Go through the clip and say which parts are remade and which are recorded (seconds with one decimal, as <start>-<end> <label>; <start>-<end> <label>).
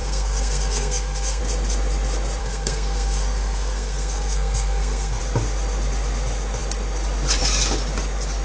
0.0-1.4 remade; 1.4-2.4 recorded; 2.4-5.2 remade; 5.2-8.4 recorded